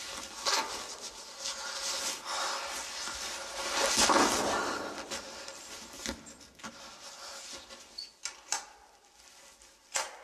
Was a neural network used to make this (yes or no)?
no